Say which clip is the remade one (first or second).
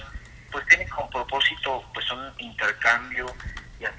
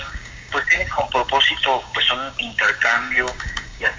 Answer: second